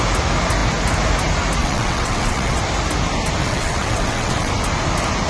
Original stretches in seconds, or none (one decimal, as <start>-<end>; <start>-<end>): 0.0-1.6; 2.6-3.4; 4.5-5.3